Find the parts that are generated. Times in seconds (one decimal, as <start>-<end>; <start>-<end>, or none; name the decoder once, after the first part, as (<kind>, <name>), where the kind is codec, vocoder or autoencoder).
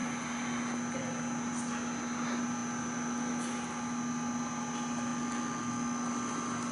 none